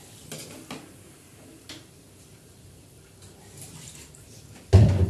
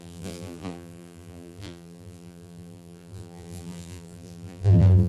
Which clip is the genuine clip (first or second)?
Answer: first